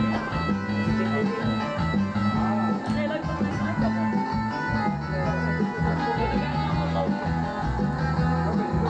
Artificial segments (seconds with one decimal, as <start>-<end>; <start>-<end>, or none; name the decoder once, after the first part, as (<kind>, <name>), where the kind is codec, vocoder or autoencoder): none